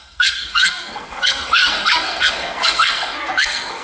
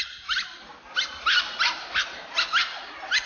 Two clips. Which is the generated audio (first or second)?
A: first